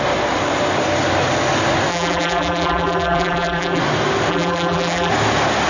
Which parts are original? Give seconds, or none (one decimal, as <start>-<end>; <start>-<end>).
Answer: 0.0-1.9; 3.8-4.3; 5.1-5.7